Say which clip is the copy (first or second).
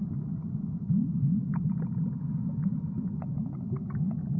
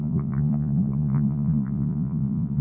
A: second